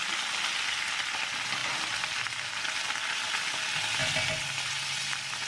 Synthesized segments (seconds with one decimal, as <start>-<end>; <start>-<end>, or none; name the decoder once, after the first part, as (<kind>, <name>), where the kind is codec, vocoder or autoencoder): 1.6-2.6 (vocoder, BigVGAN v2)